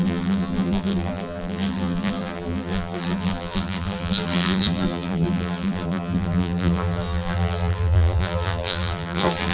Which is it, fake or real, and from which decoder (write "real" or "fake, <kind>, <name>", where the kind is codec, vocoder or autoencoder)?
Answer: fake, vocoder, BigVGAN v2